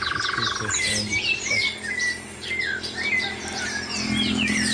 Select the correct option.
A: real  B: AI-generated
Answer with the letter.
A